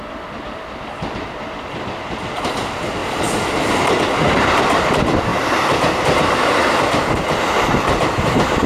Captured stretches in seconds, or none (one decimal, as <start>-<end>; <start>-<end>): 0.0-8.7